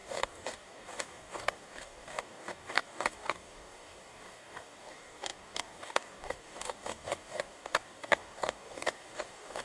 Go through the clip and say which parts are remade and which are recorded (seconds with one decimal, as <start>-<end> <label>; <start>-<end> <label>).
0.0-9.6 remade